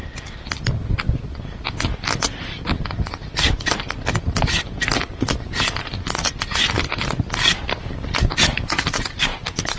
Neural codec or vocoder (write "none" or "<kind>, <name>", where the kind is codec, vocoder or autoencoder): none